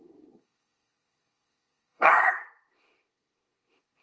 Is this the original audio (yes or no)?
no